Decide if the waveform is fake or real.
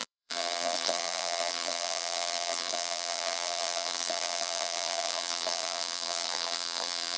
fake